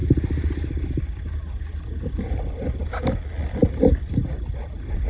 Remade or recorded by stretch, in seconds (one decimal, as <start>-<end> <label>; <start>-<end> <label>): 0.0-5.1 recorded

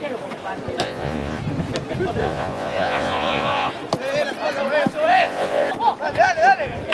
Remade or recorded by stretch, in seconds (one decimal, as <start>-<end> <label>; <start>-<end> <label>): 0.0-0.8 recorded; 0.8-1.4 remade; 1.4-2.2 recorded; 2.2-3.7 remade; 3.7-5.1 recorded; 5.1-5.7 remade; 5.7-6.9 recorded

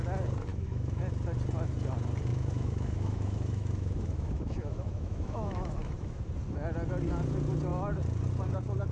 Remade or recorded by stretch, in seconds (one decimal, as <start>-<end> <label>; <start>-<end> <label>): 0.0-0.5 recorded; 0.5-1.0 remade; 1.0-2.3 recorded; 2.3-6.2 remade; 6.2-8.9 recorded